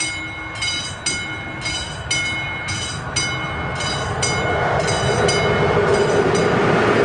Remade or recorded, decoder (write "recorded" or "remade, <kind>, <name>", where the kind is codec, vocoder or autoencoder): recorded